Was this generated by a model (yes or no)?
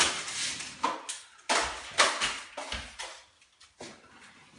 no